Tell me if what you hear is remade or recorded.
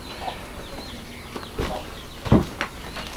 recorded